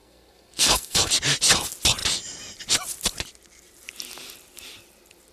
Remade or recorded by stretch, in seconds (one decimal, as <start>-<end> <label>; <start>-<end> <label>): 0.0-1.1 remade; 1.1-5.3 recorded